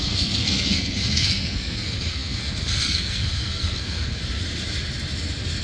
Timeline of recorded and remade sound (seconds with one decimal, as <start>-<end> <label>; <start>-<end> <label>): 0.0-4.2 remade; 4.2-5.6 recorded